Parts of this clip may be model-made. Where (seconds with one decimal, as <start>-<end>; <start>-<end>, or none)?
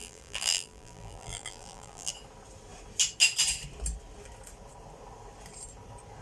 0.0-2.1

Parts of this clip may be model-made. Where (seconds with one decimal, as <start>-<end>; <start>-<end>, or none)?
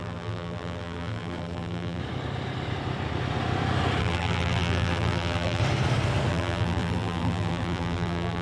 0.0-2.0; 4.0-5.6; 6.3-8.4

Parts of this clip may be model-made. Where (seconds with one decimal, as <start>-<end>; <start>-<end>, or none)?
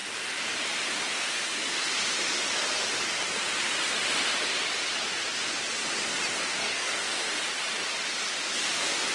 6.6-7.2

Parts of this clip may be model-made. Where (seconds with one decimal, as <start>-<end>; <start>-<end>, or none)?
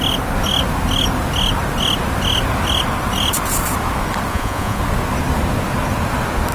4.3-4.8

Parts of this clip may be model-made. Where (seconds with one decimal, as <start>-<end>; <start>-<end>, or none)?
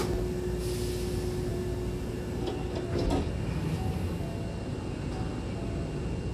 none